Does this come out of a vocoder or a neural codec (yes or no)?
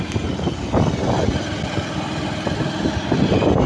no